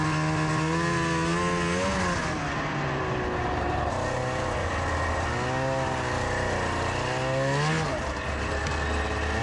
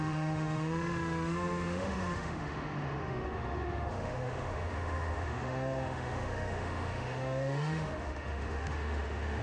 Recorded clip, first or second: first